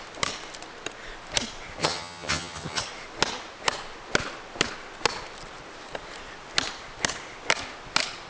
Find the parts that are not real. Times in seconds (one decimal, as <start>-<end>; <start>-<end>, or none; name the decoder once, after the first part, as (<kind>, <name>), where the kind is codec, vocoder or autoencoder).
1.8-2.8 (vocoder, HiFi-GAN)